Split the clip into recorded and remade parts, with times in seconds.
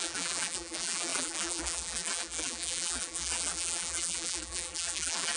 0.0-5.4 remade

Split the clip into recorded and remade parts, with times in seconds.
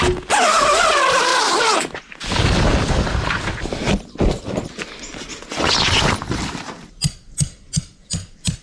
0.0-8.6 recorded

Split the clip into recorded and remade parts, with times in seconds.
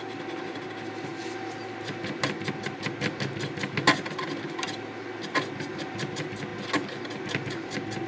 0.0-8.1 recorded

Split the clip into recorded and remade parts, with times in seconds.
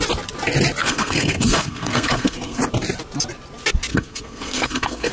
0.0-0.8 recorded; 0.8-2.6 remade; 2.6-3.9 recorded; 3.9-5.1 remade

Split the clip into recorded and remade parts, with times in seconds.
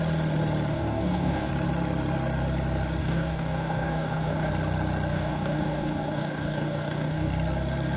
0.0-0.7 recorded; 0.7-1.5 remade; 1.5-3.0 recorded; 3.0-4.5 remade; 4.5-5.1 recorded; 5.1-7.3 remade; 7.3-8.0 recorded